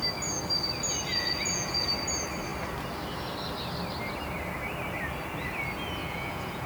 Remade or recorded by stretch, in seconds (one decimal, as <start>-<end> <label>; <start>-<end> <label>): 0.0-1.1 recorded; 1.1-1.9 remade; 1.9-6.0 recorded; 6.0-6.7 remade